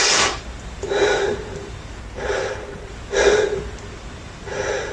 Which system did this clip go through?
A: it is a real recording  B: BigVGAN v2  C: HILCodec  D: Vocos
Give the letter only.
A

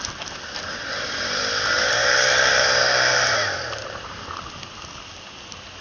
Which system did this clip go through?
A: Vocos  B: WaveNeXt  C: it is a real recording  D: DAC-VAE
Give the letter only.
C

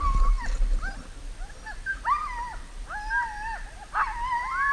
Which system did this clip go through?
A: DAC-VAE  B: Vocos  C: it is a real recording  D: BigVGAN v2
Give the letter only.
C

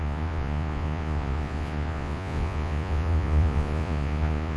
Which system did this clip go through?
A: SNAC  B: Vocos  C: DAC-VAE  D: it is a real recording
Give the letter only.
B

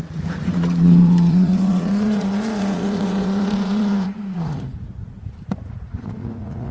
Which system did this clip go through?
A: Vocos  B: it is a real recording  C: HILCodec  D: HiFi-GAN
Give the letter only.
A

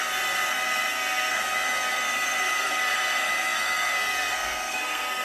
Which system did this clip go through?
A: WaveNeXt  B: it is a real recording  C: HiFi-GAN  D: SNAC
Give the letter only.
D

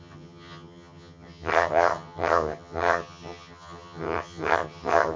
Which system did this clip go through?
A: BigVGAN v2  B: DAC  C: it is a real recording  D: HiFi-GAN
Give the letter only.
D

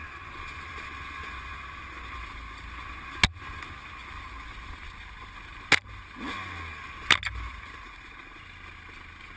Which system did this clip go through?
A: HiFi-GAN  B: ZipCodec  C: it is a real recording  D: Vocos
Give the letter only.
C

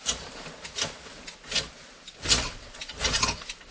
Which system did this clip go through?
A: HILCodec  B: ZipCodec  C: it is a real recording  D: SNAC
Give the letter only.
C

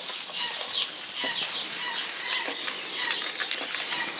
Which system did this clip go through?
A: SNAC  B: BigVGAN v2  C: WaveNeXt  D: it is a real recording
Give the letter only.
D